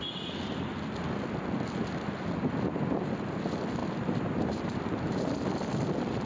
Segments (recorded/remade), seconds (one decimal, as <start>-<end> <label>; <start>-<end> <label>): 0.0-3.8 recorded; 3.8-6.3 remade